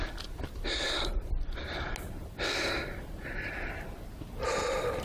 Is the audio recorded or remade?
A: recorded